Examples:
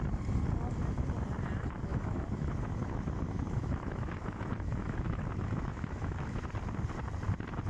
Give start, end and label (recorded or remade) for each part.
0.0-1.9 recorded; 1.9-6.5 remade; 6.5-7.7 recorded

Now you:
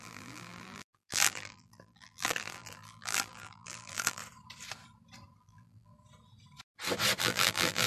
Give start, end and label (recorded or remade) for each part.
0.0-4.2 remade; 4.2-5.4 recorded; 5.4-5.9 remade; 5.9-7.2 recorded; 7.2-7.9 remade

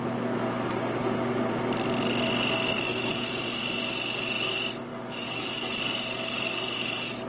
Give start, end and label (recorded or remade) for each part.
0.0-2.7 recorded; 2.7-3.3 remade; 3.3-4.9 recorded; 4.9-5.8 remade; 5.8-7.3 recorded

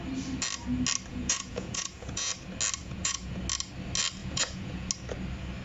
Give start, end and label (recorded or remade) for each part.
0.0-1.1 recorded; 1.1-2.3 remade; 2.3-2.8 recorded; 2.8-3.4 remade; 3.4-4.2 recorded; 4.2-4.9 remade; 4.9-5.6 recorded

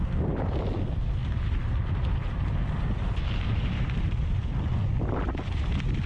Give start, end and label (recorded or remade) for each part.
0.0-6.1 recorded

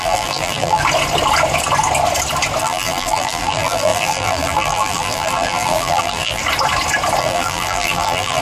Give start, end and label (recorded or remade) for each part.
0.0-0.8 remade; 0.8-2.6 recorded; 2.6-6.4 remade; 6.4-7.2 recorded; 7.2-8.4 remade

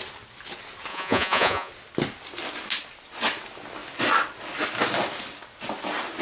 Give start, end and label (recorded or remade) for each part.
0.0-0.9 recorded; 0.9-1.7 remade; 1.7-6.2 recorded